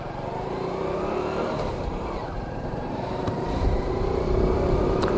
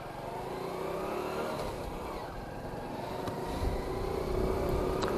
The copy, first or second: first